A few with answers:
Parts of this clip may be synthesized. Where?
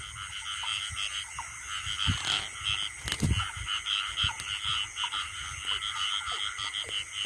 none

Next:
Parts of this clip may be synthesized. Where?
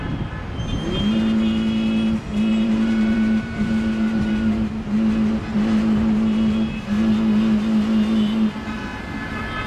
2.5-4.3 (vocoder, BigVGAN v2)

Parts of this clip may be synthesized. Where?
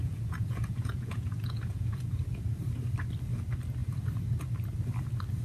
0.0-2.2 (vocoder, Vocos)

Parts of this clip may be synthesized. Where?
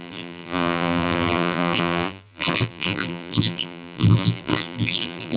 0.0-5.4 (vocoder, BigVGAN v2)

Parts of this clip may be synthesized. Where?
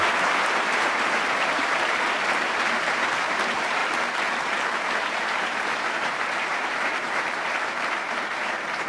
0.0-3.8 (vocoder, BigVGAN v2); 4.4-8.9